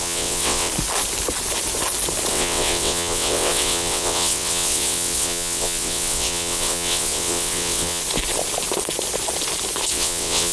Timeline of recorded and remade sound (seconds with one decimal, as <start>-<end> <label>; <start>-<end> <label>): 0.0-0.7 remade; 0.7-2.3 recorded; 2.3-8.0 remade; 8.0-9.9 recorded; 9.9-10.5 remade